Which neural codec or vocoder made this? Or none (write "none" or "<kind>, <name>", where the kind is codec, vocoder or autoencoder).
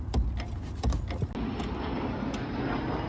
none